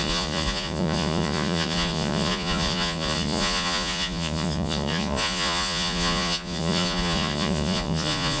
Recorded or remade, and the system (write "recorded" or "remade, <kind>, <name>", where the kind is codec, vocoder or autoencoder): remade, vocoder, Vocos